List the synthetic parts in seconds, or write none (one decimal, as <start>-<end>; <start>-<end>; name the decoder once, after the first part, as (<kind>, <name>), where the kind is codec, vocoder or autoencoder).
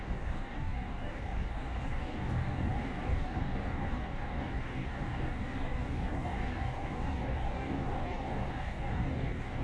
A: 0.0-9.6 (codec, DAC)